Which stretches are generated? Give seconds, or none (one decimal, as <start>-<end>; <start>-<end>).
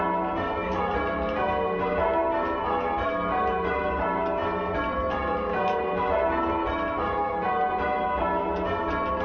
none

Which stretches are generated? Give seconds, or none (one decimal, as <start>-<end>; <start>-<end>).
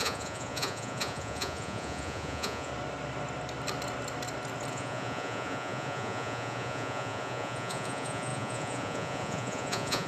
0.0-2.7; 4.7-10.1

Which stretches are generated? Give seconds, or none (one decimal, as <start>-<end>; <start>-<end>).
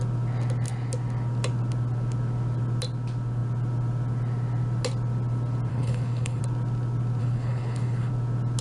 5.7-6.4; 7.2-8.1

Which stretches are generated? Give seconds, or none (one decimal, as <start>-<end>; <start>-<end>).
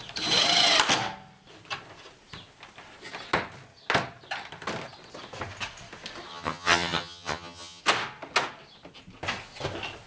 6.3-7.8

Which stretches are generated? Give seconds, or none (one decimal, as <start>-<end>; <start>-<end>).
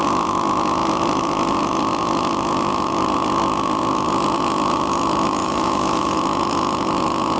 5.4-6.2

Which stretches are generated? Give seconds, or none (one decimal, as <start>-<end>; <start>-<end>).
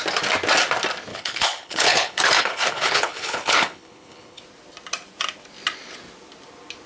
1.1-4.4